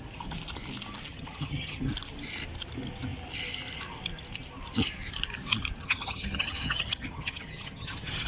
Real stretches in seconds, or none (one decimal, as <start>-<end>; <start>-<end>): 0.0-1.1; 1.9-5.8